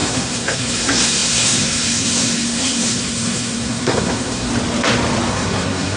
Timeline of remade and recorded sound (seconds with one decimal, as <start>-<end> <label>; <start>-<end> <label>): 0.0-4.5 remade; 4.5-5.3 recorded; 5.3-6.0 remade